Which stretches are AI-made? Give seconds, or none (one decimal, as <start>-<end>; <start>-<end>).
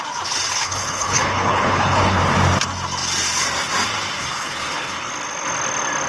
0.5-2.2; 4.2-5.1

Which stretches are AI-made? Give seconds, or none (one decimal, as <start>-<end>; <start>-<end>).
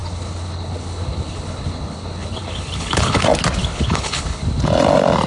0.0-3.2; 3.6-4.6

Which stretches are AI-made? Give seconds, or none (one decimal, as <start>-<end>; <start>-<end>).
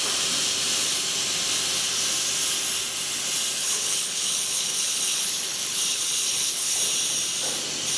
3.6-6.8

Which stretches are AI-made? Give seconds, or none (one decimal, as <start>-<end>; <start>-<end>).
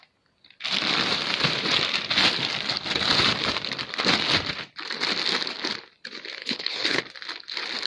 6.4-7.0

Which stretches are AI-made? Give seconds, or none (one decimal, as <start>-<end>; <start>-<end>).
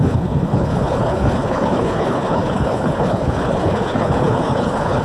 0.0-5.0